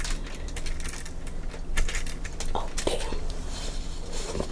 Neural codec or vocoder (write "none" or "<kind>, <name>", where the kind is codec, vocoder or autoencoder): none